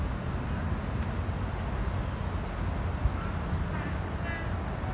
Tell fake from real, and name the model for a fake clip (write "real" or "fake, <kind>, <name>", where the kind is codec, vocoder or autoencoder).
real